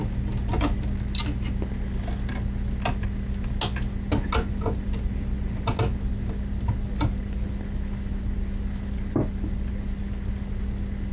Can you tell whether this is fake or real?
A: real